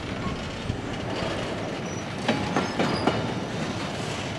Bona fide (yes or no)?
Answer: yes